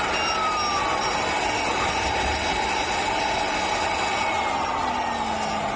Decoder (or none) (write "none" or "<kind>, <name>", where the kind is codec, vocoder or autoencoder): none